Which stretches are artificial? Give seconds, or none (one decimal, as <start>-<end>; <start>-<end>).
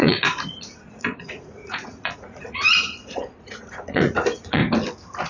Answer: 0.0-4.6